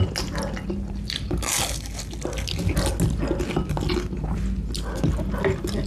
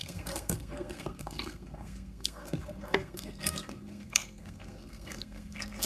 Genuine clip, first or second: first